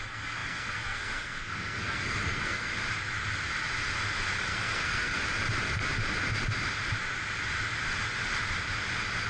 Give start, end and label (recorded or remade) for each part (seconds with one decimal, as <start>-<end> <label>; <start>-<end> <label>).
0.0-2.7 remade; 2.7-4.4 recorded; 4.4-5.2 remade; 5.2-9.3 recorded